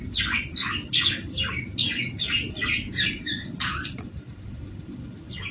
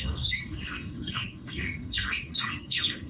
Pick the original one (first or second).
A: first